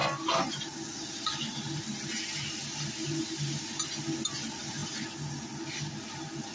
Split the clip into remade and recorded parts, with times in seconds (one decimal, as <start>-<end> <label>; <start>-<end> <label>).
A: 0.0-6.5 recorded

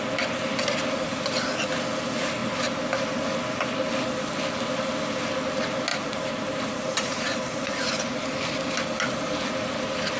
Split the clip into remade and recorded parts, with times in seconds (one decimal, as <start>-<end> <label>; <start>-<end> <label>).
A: 0.0-5.9 recorded; 5.9-8.6 remade; 8.6-10.2 recorded

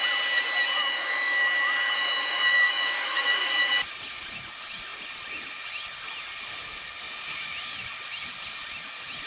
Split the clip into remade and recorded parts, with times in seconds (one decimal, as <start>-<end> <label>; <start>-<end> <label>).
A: 0.0-0.8 recorded; 0.8-3.8 remade; 3.8-9.3 recorded